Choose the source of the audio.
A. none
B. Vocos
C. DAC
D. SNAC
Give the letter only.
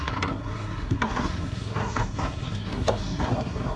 D